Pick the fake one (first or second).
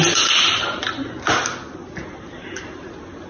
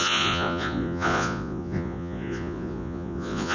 second